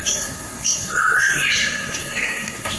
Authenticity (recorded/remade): remade